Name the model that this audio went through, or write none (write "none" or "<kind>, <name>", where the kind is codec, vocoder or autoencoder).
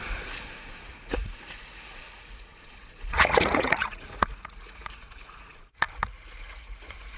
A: vocoder, Vocos